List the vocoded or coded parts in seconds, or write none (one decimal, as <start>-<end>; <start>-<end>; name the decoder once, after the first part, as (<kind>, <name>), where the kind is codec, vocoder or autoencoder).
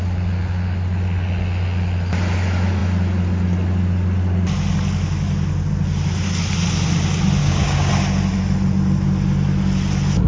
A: 7.4-7.9 (codec, DAC)